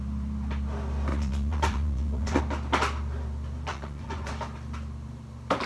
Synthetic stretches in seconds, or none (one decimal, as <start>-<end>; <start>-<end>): 1.1-2.4; 3.7-4.3